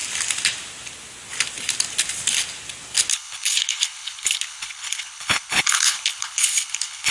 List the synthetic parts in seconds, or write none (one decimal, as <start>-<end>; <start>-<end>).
3.1-7.1